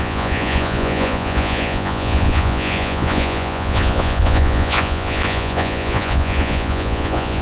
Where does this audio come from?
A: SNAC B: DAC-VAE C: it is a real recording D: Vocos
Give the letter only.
D